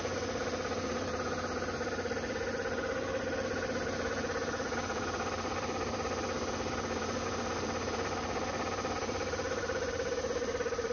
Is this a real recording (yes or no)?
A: no